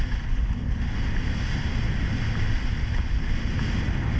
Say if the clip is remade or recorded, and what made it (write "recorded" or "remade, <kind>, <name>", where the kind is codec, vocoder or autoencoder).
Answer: recorded